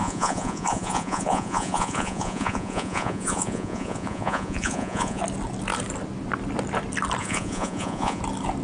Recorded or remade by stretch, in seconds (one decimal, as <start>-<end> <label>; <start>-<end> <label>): 0.0-5.2 remade; 5.2-7.2 recorded; 7.2-8.2 remade; 8.2-8.6 recorded